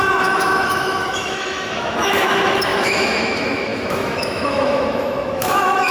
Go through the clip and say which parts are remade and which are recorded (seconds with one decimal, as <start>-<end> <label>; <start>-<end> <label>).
0.0-5.9 remade